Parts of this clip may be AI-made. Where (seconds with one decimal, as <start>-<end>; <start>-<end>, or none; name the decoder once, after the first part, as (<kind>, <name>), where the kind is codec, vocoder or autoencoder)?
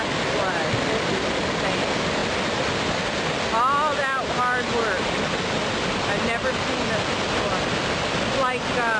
none